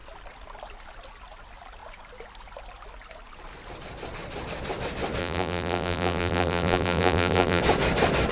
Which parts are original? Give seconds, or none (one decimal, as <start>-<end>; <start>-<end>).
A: 0.0-5.2; 7.6-8.3